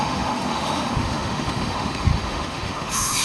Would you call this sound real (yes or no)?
no